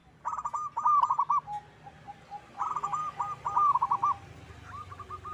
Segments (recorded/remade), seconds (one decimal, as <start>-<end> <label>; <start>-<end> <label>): 0.0-5.3 recorded